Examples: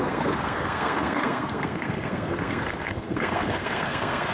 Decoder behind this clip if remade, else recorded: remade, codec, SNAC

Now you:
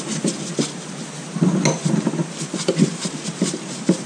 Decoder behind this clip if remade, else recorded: recorded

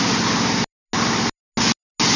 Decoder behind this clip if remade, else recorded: recorded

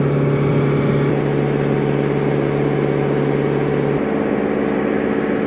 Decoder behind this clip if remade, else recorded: recorded